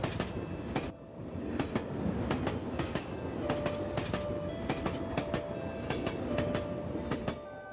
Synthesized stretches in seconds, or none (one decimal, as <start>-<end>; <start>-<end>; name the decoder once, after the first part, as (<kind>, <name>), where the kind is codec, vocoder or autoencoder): 2.6-3.2 (codec, DAC)

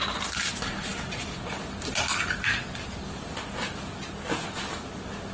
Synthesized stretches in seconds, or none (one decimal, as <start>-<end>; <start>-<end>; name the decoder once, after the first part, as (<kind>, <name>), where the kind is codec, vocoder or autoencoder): none